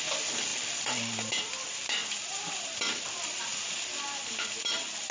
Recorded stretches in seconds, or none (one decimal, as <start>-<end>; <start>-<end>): 0.0-5.1